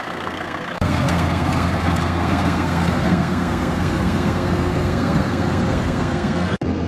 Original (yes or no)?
no